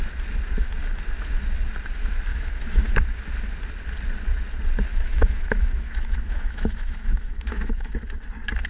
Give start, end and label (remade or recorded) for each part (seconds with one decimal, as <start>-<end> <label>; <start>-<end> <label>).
0.0-2.3 recorded; 2.3-3.0 remade; 3.0-4.9 recorded; 4.9-7.9 remade; 7.9-8.7 recorded